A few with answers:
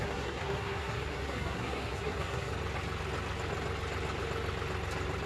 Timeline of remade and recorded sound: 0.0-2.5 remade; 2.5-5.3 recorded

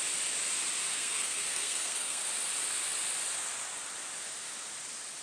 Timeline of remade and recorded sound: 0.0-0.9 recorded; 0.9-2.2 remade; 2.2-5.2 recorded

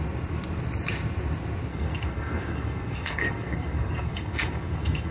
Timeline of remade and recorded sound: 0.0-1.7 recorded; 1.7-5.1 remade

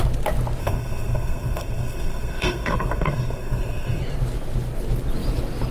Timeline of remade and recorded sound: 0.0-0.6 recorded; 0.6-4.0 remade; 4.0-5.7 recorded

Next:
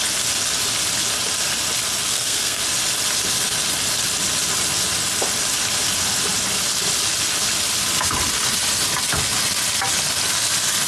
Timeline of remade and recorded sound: 0.0-2.1 recorded; 2.1-2.6 remade; 2.6-10.9 recorded